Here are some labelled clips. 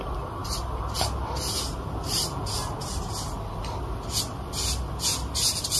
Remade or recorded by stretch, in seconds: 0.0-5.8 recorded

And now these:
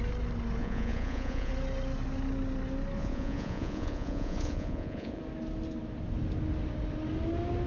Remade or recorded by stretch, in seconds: 0.0-0.6 recorded; 0.6-1.5 remade; 1.5-3.0 recorded; 3.0-5.2 remade; 5.2-7.7 recorded

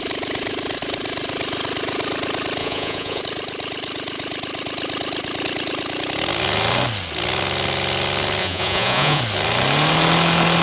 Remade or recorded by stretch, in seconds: 0.0-2.6 recorded; 2.6-3.2 remade; 3.2-8.4 recorded; 8.4-9.2 remade; 9.2-10.6 recorded

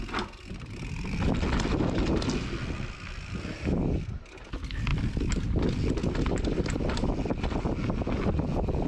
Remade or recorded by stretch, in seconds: 0.0-8.9 recorded